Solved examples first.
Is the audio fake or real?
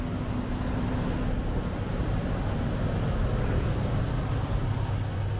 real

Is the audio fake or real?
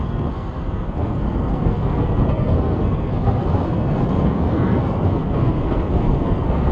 fake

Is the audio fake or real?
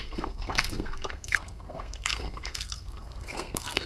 fake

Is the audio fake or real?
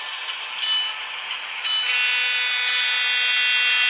real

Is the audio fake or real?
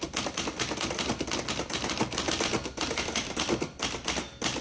real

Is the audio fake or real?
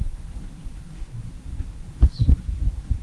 fake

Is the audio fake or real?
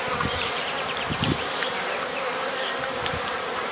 fake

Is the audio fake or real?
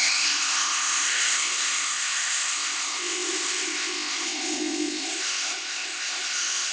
fake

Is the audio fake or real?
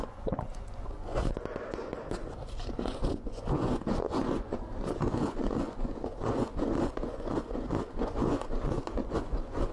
fake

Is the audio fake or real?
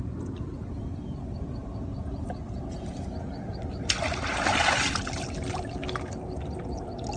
real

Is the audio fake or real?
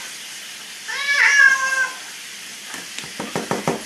real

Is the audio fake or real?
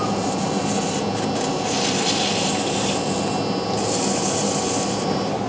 real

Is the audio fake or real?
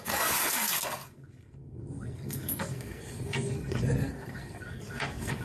fake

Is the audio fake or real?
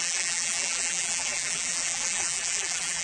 fake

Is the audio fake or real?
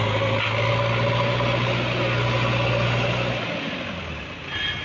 real